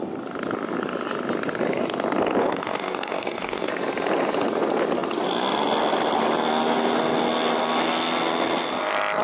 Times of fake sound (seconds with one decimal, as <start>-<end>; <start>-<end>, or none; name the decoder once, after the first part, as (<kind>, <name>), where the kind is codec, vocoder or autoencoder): 2.4-3.7 (codec, DAC)